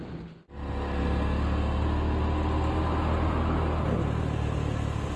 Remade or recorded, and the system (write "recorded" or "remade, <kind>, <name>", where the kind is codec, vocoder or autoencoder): recorded